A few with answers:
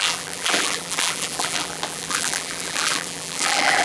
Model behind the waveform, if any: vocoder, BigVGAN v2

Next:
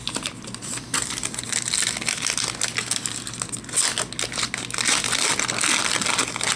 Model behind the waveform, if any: none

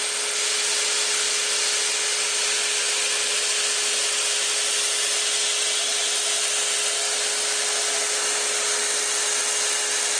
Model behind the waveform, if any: none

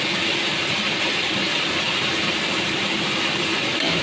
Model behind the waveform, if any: vocoder, BigVGAN v2